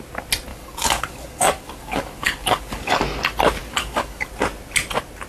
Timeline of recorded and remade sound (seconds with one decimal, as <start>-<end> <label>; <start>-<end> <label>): 0.0-0.5 recorded; 0.5-3.0 remade; 3.0-3.6 recorded; 3.6-4.3 remade; 4.3-5.3 recorded